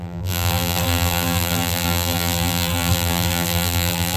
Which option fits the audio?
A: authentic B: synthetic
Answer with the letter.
B